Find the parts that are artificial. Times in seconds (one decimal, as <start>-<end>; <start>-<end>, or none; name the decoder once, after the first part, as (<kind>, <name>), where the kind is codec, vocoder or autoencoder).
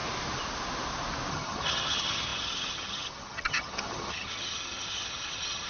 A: 1.3-5.7 (vocoder, HiFi-GAN)